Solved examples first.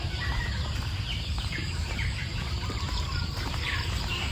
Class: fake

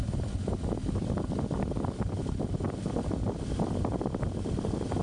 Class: real